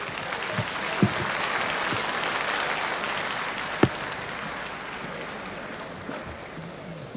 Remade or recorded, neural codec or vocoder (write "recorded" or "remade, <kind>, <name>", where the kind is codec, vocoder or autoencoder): recorded